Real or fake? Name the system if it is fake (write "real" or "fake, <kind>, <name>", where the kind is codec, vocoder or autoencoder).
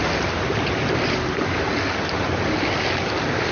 real